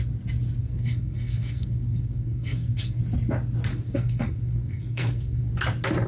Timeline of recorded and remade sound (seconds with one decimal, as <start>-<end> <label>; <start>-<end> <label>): 0.0-0.6 recorded; 0.6-3.0 remade; 3.0-3.7 recorded; 3.7-5.5 remade; 5.5-6.1 recorded